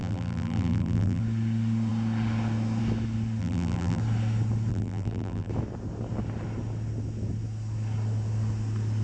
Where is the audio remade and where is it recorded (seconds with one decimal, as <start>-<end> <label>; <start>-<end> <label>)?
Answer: 0.0-1.2 remade; 1.2-3.4 recorded; 3.4-4.0 remade; 4.0-4.7 recorded; 4.7-5.5 remade; 5.5-9.0 recorded